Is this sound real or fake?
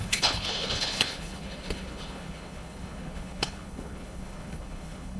fake